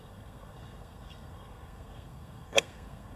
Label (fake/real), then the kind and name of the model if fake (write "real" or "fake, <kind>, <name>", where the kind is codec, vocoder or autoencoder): fake, codec, SNAC